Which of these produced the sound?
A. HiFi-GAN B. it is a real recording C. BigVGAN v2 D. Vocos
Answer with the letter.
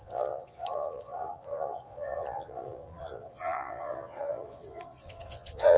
D